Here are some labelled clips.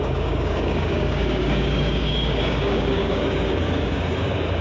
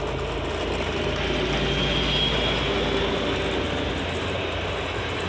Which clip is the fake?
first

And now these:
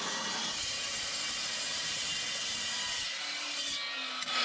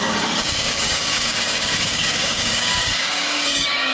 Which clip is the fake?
second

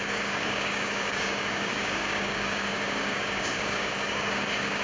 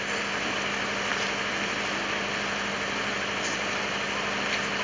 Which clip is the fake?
first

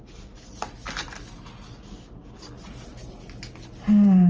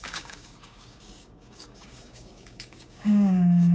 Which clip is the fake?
second